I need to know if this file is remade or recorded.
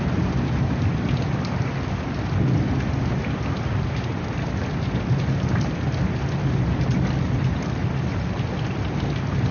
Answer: recorded